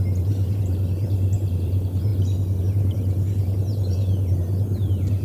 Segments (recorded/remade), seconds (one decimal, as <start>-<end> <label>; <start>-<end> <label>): 0.0-2.1 remade; 2.1-2.6 recorded; 2.6-5.2 remade